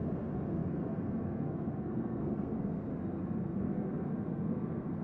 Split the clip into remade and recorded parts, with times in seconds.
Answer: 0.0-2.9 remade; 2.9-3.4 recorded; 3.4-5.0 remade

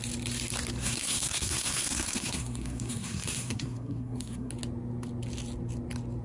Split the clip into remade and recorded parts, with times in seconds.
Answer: 0.0-0.8 recorded; 0.8-4.5 remade; 4.5-6.2 recorded

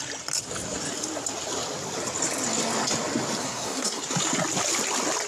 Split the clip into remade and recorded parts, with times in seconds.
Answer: 0.0-3.4 recorded; 3.4-4.0 remade; 4.0-5.3 recorded

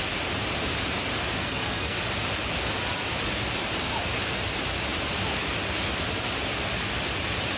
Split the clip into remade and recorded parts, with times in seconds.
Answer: 0.0-1.4 recorded; 1.4-2.0 remade; 2.0-7.6 recorded

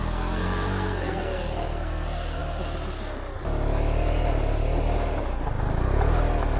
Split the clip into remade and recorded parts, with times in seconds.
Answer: 0.0-2.4 remade; 2.4-6.6 recorded